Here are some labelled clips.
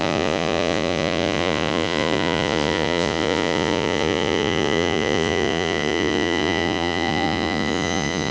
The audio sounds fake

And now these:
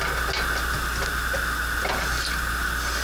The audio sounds real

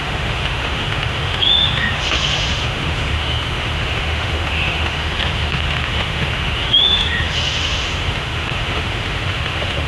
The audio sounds fake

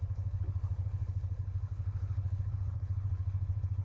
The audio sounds fake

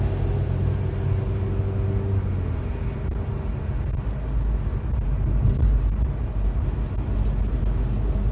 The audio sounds real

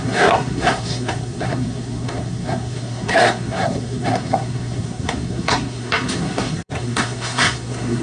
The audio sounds fake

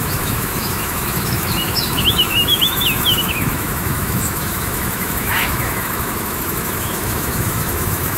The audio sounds fake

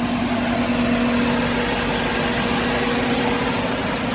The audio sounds real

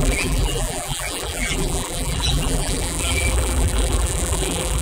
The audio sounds fake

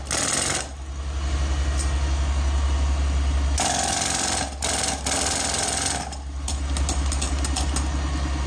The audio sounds real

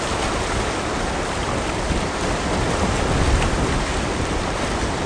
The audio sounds real